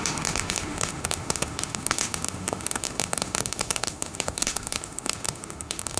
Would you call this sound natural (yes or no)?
no